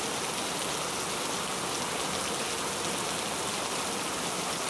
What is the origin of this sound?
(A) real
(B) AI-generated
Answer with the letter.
A